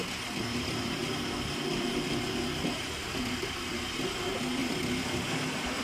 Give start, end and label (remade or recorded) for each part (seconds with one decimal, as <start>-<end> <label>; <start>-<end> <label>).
0.0-4.6 recorded; 4.6-5.8 remade